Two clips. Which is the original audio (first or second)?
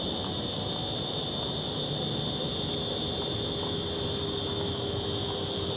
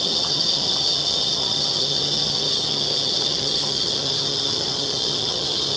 first